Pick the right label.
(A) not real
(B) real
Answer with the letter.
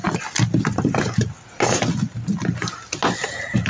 B